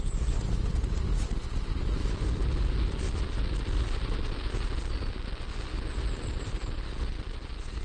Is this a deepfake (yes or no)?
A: no